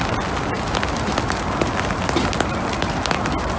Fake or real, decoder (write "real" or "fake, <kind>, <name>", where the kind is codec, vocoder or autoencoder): real